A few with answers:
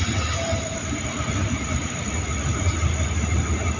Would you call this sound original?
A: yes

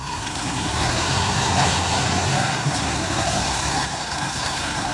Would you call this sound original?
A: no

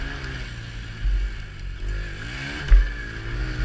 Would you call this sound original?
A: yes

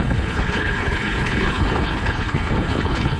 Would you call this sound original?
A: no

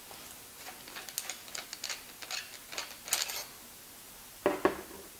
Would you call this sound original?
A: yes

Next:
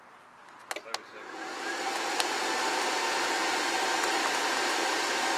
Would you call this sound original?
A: yes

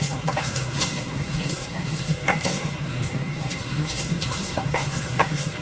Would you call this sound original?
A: no